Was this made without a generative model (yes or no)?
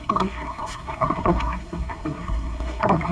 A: no